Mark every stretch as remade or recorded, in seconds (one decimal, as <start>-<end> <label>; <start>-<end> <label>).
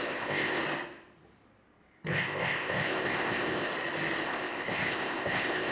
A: 0.0-0.6 remade; 0.6-2.1 recorded; 2.1-3.7 remade; 3.7-4.2 recorded; 4.2-5.7 remade